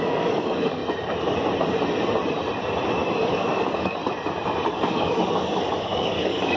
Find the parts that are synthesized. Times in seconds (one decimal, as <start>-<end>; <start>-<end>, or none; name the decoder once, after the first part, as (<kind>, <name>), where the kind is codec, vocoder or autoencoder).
0.0-0.8 (codec, DAC); 3.3-4.0; 4.7-6.6